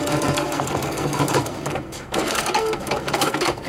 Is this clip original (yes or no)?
no